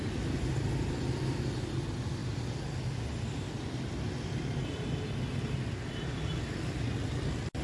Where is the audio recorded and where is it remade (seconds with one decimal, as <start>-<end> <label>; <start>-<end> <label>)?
0.0-7.6 recorded